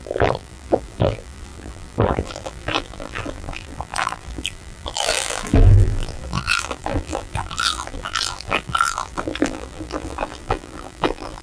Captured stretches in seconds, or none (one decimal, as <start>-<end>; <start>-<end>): none